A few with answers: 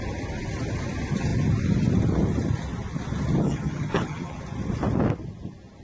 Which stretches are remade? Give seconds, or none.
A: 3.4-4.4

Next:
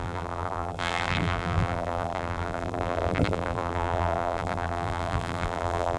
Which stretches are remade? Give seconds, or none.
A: 0.0-6.0

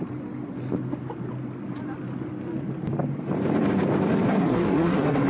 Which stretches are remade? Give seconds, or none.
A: 4.3-5.3

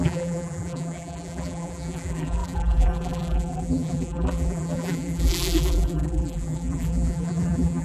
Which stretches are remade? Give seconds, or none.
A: 0.0-7.8

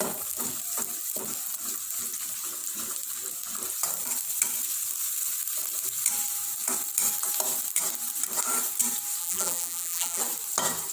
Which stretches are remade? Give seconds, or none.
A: 9.2-10.2